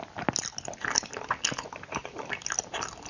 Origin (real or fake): real